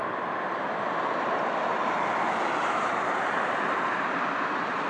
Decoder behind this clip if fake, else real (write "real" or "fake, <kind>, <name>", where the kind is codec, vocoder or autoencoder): fake, vocoder, BigVGAN v2